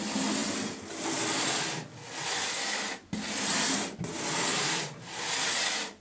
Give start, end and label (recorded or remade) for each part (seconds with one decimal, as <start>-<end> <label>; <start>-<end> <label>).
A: 0.0-4.5 recorded; 4.5-5.3 remade; 5.3-6.0 recorded